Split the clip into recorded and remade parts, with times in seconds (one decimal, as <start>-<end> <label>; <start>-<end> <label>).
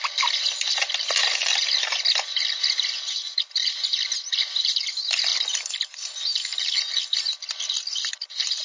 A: 0.0-5.3 recorded; 5.3-6.2 remade; 6.2-8.6 recorded